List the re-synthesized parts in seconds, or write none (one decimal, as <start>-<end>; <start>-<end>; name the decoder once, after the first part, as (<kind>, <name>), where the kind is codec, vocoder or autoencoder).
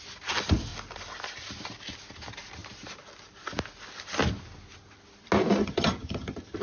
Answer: 5.6-6.6 (vocoder, HiFi-GAN)